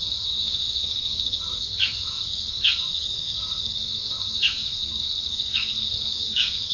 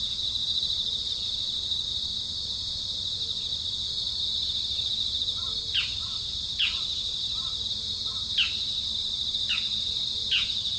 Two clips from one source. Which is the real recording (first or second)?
second